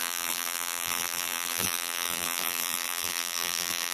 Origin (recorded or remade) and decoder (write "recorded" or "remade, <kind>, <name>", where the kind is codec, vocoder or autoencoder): remade, vocoder, BigVGAN v2